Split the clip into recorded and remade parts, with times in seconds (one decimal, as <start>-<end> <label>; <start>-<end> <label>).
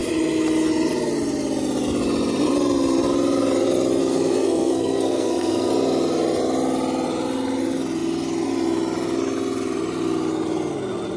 0.0-4.0 recorded; 4.0-5.7 remade; 5.7-11.2 recorded